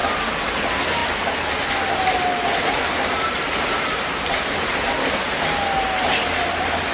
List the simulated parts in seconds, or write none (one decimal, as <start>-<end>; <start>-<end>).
none